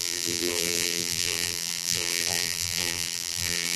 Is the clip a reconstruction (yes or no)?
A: yes